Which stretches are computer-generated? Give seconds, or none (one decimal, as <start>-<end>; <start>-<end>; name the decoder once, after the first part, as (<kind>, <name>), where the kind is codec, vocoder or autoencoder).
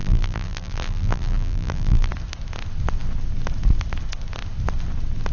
0.0-2.1 (vocoder, BigVGAN v2)